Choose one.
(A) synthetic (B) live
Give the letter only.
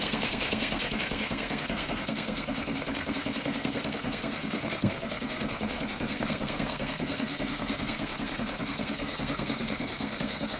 A